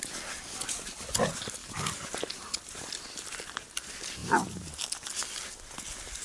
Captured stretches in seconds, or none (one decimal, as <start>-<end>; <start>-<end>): 0.0-1.6; 2.1-6.2